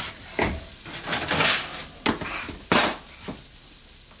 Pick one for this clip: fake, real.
real